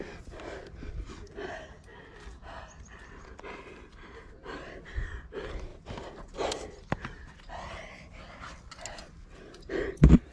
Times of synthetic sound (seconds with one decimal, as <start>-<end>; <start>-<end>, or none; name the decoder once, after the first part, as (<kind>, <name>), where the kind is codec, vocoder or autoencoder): 1.9-2.4 (vocoder, BigVGAN v2)